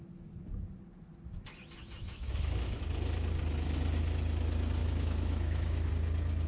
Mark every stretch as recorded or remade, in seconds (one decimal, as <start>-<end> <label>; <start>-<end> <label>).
0.0-1.8 recorded; 1.8-2.8 remade; 2.8-4.8 recorded; 4.8-5.9 remade; 5.9-6.5 recorded